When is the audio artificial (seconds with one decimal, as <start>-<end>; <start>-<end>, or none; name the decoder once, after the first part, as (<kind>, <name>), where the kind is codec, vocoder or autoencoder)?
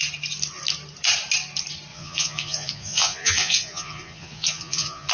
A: 1.9-5.1 (vocoder, Vocos)